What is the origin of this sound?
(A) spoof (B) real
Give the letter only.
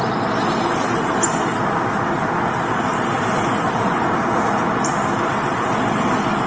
B